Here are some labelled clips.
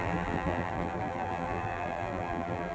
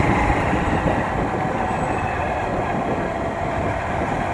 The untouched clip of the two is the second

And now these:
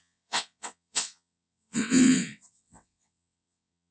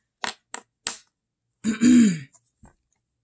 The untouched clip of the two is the second